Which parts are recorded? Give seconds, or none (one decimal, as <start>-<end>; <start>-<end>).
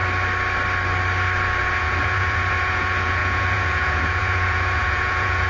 0.0-1.7